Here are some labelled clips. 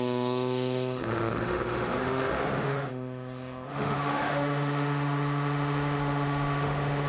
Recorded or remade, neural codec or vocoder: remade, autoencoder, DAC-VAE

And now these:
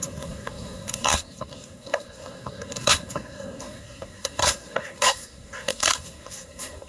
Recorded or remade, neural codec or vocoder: remade, codec, SNAC